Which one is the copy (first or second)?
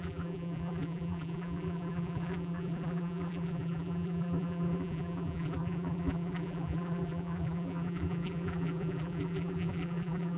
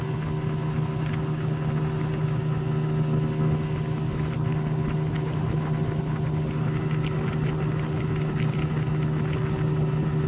first